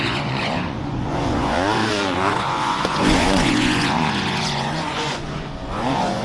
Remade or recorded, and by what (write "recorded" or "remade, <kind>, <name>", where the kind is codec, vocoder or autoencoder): remade, vocoder, Vocos